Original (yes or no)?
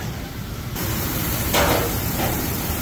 no